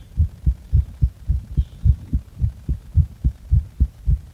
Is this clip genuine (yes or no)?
no